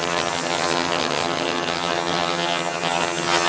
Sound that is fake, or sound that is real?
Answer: fake